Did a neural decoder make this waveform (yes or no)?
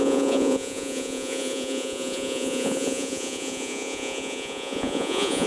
yes